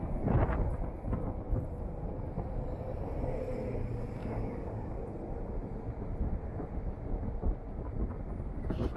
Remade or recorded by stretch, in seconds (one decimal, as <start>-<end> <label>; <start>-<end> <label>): 0.0-4.2 recorded; 4.2-5.0 remade; 5.0-9.0 recorded